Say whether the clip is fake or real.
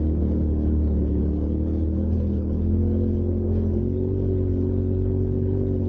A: fake